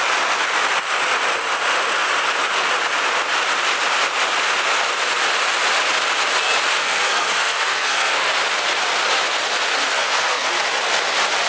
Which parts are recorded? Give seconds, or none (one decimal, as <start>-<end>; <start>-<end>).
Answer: 0.0-6.8; 8.3-9.7; 10.5-11.5